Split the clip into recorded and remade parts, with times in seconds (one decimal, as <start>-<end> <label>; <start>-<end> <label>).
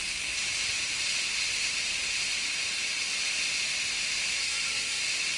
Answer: 0.0-4.4 recorded; 4.4-5.0 remade; 5.0-5.4 recorded